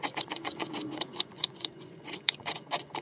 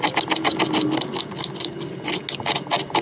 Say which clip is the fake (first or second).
first